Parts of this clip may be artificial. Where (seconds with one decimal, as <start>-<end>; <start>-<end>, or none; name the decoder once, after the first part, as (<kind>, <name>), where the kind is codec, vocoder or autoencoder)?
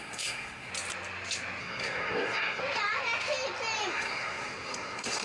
0.0-0.7 (codec, SNAC); 1.6-2.6; 3.9-5.2